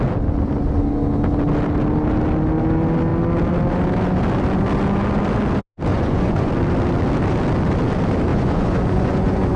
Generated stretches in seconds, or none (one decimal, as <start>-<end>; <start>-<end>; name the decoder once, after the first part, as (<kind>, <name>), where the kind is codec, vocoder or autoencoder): 5.9-6.5 (vocoder, Vocos); 8.3-9.6